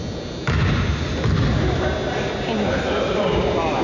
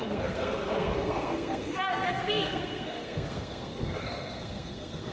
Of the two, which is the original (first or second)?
first